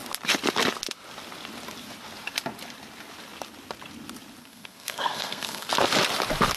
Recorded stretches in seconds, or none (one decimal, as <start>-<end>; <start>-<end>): 0.0-4.4; 5.7-6.6